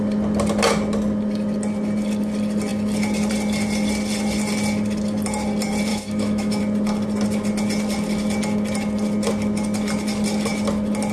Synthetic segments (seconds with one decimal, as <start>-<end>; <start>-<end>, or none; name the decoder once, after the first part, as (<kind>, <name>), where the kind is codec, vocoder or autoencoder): 5.9-6.6 (autoencoder, DAC-VAE)